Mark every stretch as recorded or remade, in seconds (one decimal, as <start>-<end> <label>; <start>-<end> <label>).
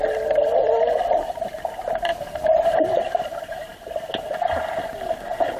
0.0-2.1 recorded; 2.1-2.8 remade; 2.8-5.6 recorded